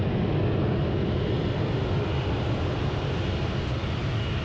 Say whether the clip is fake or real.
real